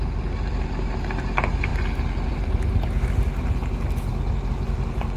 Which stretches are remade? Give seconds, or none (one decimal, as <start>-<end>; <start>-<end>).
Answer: none